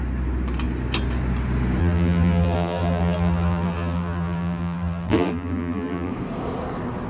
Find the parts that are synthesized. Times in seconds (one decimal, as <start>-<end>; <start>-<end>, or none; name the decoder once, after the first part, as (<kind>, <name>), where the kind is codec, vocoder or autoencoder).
1.8-6.1 (vocoder, BigVGAN v2)